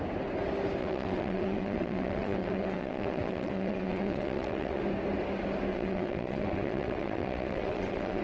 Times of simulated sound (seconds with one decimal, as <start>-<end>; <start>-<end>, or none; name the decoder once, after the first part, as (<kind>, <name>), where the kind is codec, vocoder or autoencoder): 0.8-4.8 (vocoder, WaveNeXt); 5.7-8.2